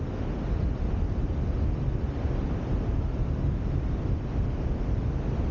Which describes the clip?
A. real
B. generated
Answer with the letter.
A